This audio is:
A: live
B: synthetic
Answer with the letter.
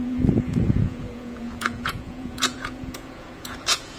B